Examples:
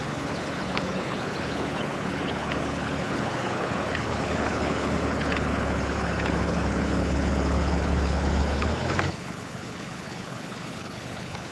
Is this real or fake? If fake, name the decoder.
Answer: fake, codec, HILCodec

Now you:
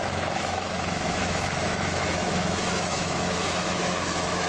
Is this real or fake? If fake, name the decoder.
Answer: fake, autoencoder, DAC-VAE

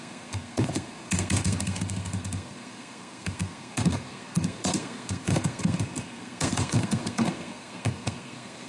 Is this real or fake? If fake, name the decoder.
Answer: fake, codec, SNAC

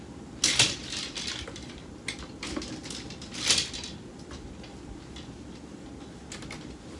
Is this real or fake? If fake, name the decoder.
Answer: real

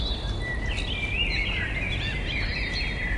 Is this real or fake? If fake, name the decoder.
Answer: real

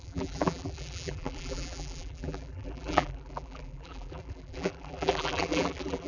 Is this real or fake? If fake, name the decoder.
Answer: fake, vocoder, BigVGAN v2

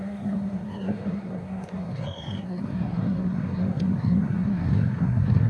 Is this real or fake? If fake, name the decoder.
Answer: fake, codec, SNAC